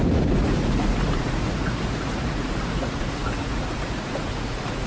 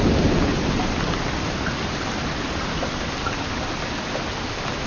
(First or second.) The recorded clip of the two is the second